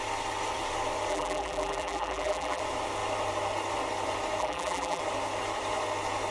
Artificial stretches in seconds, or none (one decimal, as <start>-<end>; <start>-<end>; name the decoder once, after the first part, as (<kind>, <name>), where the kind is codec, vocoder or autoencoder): 1.1-2.6 (vocoder, BigVGAN v2); 4.4-5.0

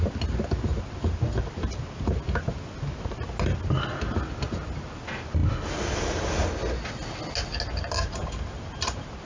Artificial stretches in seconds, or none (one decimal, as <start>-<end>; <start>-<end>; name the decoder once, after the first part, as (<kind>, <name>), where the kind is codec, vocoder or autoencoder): none

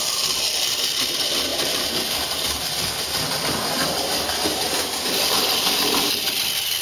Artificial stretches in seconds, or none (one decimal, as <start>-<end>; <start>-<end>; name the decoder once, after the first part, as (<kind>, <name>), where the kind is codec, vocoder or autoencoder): none

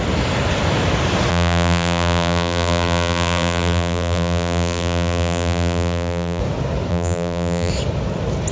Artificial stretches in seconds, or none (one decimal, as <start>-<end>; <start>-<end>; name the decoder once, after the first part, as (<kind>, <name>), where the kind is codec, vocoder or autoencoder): 1.3-6.4 (vocoder, BigVGAN v2); 6.9-7.7

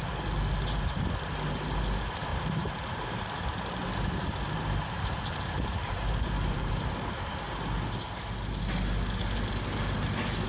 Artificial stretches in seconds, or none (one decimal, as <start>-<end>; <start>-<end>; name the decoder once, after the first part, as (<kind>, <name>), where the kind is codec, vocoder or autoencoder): 2.3-6.7 (vocoder, BigVGAN v2)

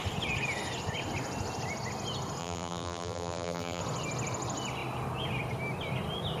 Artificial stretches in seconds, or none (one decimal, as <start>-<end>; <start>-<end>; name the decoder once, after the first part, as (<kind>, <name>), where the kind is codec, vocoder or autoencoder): 2.4-3.8 (vocoder, BigVGAN v2)